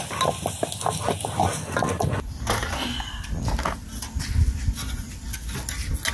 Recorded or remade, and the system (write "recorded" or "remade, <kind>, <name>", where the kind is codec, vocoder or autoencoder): recorded